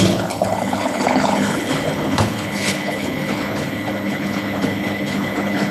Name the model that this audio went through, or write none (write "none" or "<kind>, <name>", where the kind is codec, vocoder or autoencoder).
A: codec, HILCodec